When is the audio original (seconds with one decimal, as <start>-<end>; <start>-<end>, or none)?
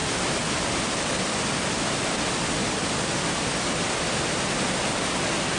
0.0-5.6